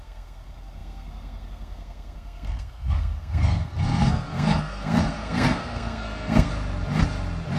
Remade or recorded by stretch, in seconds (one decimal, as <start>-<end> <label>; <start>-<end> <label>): 0.0-6.5 remade; 6.5-7.6 recorded

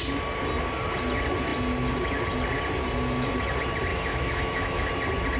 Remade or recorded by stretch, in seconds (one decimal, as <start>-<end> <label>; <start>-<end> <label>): 0.0-3.9 recorded; 3.9-4.9 remade; 4.9-5.4 recorded

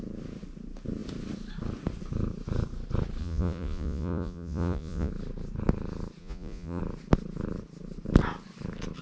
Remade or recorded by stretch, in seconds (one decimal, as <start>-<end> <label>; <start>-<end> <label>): 0.0-3.2 recorded; 3.2-5.1 remade; 5.1-6.2 recorded; 6.2-6.8 remade; 6.8-9.0 recorded

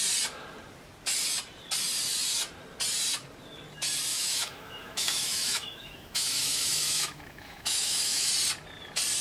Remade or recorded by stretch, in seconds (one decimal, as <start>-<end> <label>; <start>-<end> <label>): 0.0-4.1 recorded; 4.1-8.3 remade; 8.3-9.2 recorded

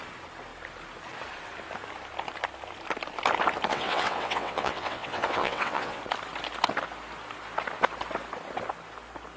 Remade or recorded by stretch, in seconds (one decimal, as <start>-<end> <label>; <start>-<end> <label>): 0.0-3.7 recorded; 3.7-6.0 remade; 6.0-9.4 recorded